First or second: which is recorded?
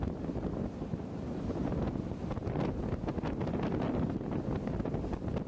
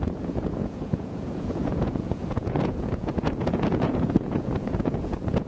first